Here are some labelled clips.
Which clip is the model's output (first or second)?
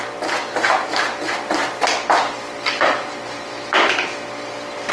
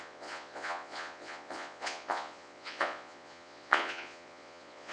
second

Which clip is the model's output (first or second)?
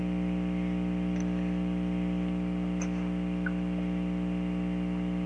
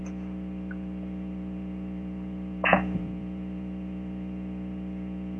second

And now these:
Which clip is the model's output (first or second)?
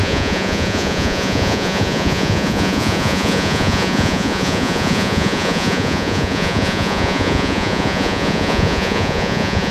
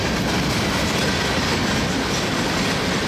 first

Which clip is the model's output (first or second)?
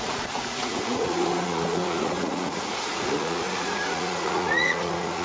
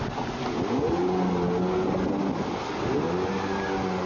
first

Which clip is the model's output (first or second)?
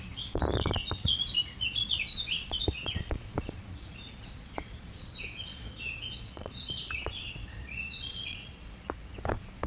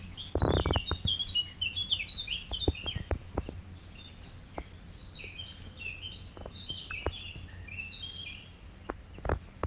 first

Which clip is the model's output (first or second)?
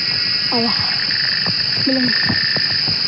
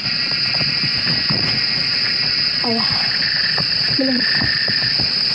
second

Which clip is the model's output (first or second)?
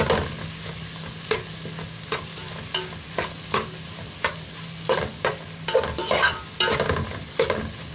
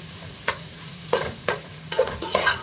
second